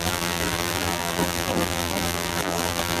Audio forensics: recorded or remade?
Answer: remade